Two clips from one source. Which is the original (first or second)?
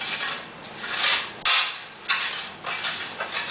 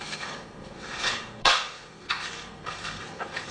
first